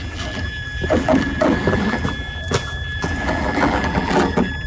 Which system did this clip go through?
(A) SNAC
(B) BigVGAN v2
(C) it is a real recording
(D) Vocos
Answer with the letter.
B